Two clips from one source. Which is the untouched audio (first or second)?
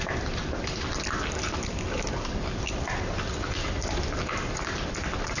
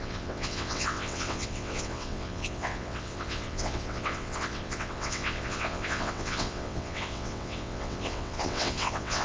first